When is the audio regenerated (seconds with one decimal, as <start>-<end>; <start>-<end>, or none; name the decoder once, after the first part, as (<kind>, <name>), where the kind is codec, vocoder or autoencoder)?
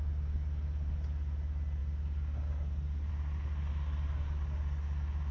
none